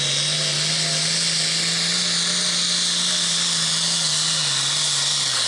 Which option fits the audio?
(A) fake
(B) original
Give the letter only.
B